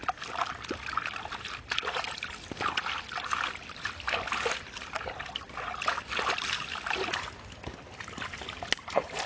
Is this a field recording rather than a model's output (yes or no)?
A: yes